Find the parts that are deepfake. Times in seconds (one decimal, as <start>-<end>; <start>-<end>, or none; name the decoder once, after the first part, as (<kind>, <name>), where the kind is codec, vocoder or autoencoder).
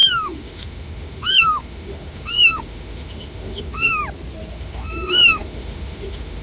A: 0.0-4.0 (autoencoder, DAC-VAE); 4.5-6.4